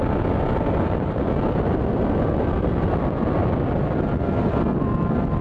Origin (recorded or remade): recorded